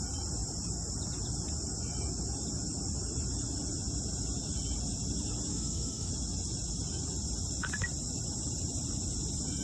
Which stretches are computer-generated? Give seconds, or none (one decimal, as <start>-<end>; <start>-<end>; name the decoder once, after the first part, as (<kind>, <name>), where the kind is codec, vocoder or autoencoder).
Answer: 5.5-6.1 (autoencoder, DAC-VAE)